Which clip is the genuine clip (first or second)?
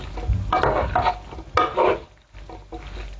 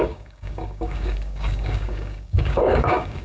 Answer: first